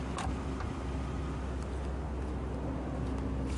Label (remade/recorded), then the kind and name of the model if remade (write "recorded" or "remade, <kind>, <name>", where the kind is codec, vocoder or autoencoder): recorded